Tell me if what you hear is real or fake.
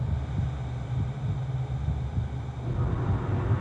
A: real